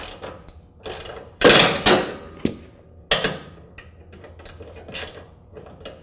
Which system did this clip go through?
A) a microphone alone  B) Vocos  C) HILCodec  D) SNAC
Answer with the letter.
A